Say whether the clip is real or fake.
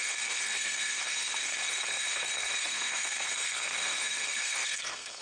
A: fake